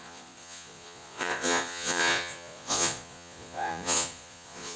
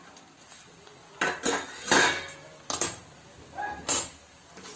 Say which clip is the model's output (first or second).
first